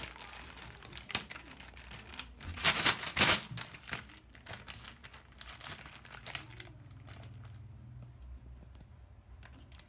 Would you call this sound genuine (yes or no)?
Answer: yes